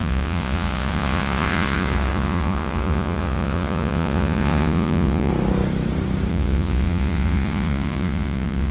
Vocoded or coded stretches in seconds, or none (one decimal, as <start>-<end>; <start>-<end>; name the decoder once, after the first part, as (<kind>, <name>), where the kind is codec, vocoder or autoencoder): 0.0-5.3 (vocoder, Vocos); 6.3-8.7